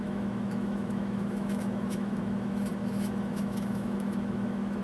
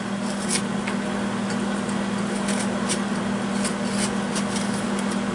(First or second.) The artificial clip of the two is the first